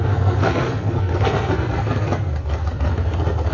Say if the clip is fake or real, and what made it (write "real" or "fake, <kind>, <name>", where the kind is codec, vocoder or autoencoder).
fake, codec, SNAC